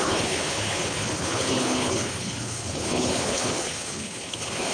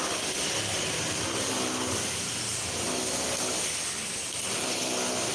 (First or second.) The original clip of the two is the second